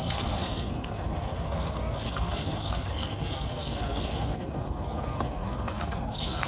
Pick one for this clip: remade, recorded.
remade